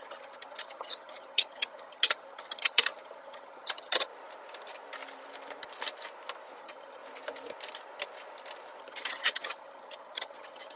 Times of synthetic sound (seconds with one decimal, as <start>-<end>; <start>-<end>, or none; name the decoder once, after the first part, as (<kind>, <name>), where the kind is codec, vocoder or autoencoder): 0.0-4.1 (vocoder, HiFi-GAN); 6.6-7.0; 8.8-10.8